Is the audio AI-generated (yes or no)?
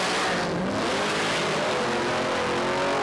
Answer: no